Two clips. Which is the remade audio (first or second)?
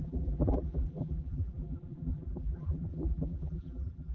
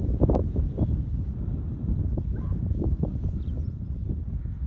first